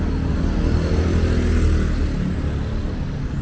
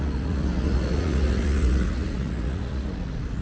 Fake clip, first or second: second